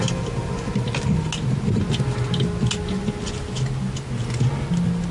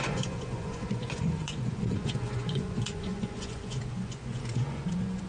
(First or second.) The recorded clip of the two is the first